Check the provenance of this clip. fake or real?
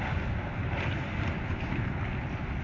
real